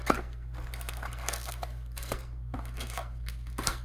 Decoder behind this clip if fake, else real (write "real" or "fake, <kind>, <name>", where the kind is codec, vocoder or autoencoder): fake, codec, SNAC